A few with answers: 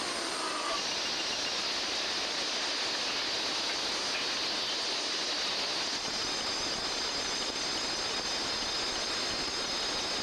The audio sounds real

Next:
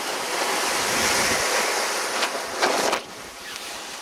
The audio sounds real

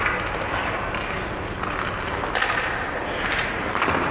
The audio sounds real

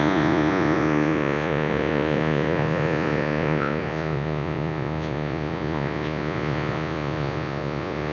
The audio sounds fake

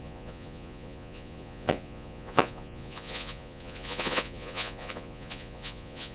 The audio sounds fake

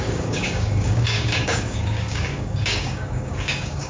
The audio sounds fake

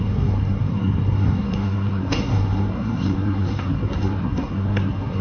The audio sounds fake